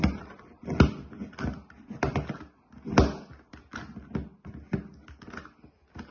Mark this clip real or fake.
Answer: real